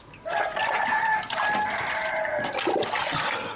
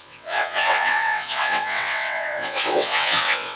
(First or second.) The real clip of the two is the first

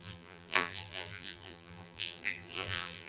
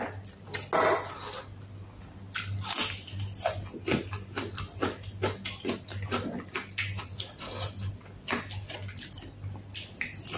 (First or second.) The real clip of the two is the second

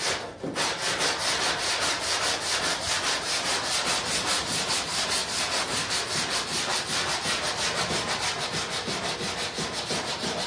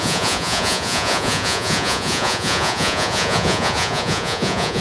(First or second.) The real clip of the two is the first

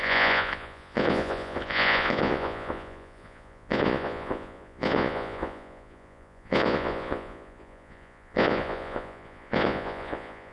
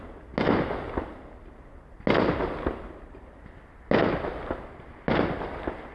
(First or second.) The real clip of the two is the second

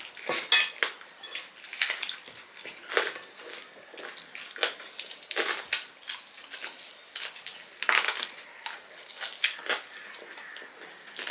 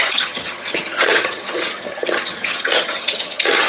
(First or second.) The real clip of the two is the first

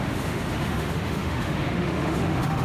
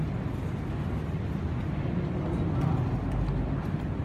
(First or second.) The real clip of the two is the second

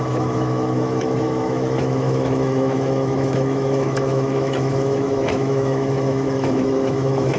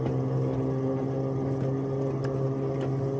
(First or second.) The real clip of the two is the second